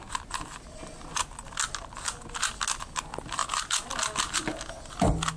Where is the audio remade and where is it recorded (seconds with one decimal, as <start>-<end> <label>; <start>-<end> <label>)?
0.0-5.4 recorded